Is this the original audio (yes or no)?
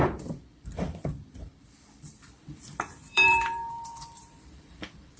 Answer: no